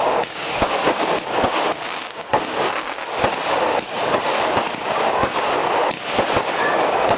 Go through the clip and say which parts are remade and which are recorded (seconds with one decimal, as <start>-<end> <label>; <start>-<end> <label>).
0.0-3.0 remade; 3.0-3.5 recorded; 3.5-4.3 remade; 4.3-4.8 recorded; 4.8-5.6 remade; 5.6-6.5 recorded; 6.5-7.2 remade